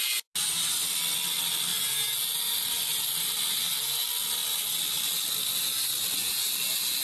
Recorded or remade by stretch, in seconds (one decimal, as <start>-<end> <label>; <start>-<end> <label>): 0.0-7.0 recorded